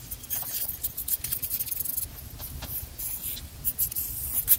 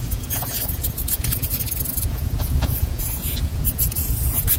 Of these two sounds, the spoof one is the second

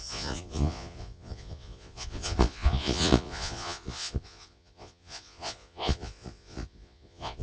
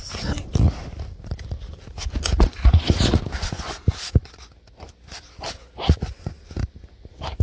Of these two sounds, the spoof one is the first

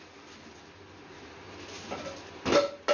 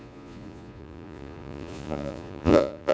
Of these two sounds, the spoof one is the second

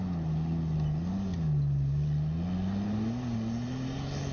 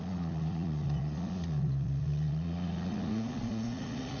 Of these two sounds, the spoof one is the second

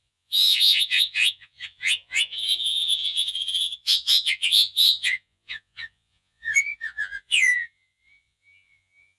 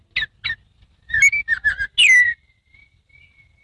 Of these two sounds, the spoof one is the first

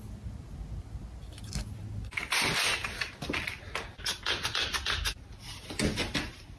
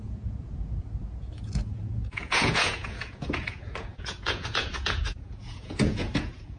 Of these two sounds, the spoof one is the second